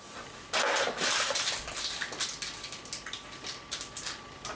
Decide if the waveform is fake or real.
real